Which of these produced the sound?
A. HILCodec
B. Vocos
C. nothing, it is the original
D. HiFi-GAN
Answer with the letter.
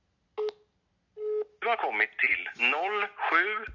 C